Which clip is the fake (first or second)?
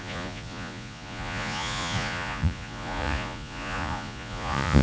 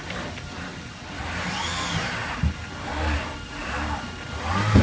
first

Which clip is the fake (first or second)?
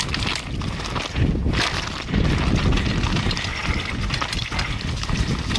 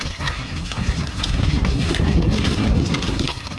second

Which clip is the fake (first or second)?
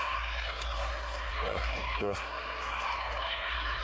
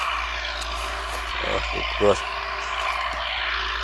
first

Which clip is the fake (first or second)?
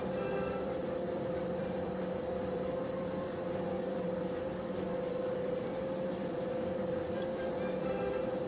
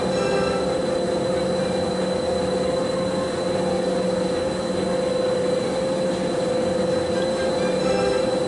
first